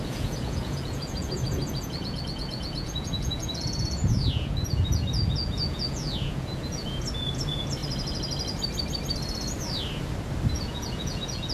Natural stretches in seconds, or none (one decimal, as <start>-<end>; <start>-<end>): 7.8-10.5